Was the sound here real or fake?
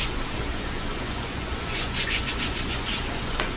fake